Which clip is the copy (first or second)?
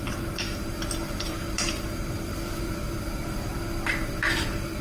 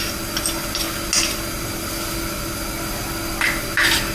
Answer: first